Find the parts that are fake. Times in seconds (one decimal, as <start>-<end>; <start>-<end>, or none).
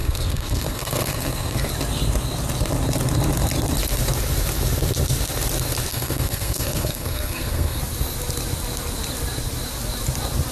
0.0-1.7; 5.9-7.8